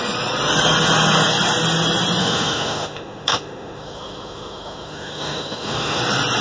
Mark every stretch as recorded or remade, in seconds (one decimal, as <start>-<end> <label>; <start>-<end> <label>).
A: 0.0-2.2 recorded; 2.2-6.0 remade; 6.0-6.4 recorded